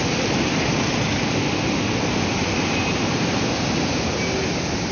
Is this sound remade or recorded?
recorded